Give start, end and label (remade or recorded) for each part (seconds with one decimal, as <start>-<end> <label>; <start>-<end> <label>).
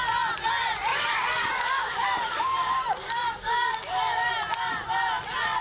0.0-0.9 recorded; 0.9-4.3 remade; 4.3-5.6 recorded